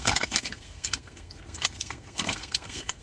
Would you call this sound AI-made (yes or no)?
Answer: yes